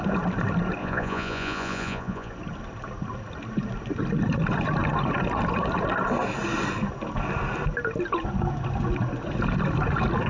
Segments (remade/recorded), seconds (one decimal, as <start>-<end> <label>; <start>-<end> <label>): 0.0-0.8 recorded; 0.8-2.3 remade; 2.3-10.3 recorded